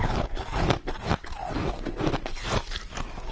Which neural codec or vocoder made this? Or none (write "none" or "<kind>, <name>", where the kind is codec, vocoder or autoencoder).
none